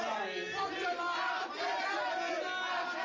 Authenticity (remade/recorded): recorded